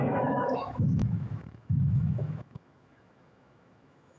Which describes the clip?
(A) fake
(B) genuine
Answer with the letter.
A